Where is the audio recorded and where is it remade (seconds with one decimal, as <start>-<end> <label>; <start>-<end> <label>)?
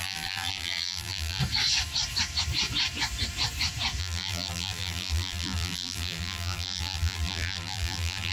0.0-1.4 remade; 1.4-4.0 recorded; 4.0-8.3 remade